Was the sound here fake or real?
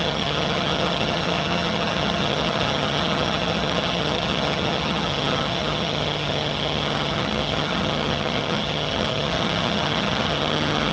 fake